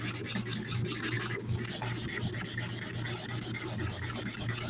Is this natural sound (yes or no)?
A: yes